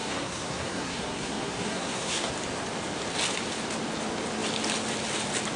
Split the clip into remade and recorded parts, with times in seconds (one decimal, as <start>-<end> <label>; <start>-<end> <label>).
0.0-2.3 remade; 2.3-5.6 recorded